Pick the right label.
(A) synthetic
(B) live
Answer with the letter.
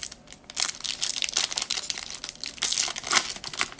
B